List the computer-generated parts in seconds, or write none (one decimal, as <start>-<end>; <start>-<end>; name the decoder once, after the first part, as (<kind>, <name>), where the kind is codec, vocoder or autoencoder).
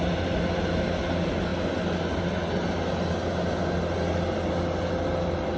none